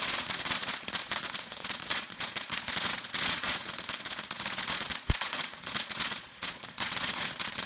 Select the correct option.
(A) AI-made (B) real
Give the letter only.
A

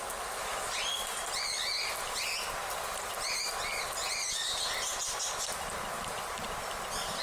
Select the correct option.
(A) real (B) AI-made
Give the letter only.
A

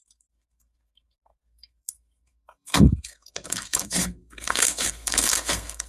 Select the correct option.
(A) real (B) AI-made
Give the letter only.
B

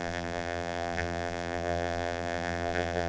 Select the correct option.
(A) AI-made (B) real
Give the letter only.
A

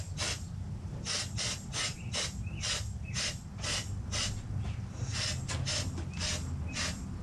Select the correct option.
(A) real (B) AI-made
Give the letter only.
A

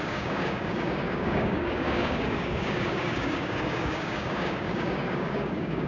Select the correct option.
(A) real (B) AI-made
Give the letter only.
B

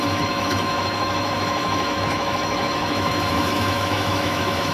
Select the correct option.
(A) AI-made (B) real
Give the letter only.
A